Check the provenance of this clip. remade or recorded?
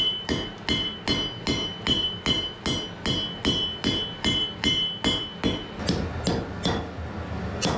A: recorded